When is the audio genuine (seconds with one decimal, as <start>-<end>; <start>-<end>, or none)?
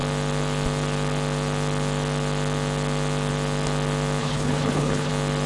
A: 0.0-4.2; 5.1-5.5